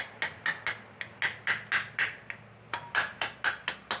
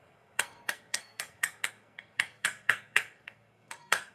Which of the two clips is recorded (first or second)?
first